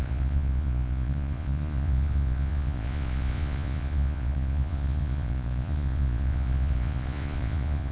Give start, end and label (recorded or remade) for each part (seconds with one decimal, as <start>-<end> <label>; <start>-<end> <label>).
0.0-7.9 remade